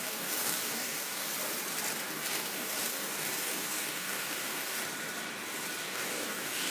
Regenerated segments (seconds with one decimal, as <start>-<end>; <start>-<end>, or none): 0.0-1.3; 2.1-4.8; 5.8-6.7